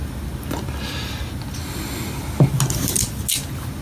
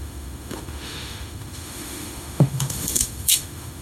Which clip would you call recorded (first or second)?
first